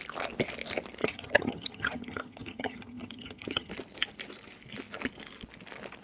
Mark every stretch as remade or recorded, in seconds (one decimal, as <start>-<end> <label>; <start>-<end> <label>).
0.0-1.0 recorded; 1.0-3.7 remade; 3.7-6.0 recorded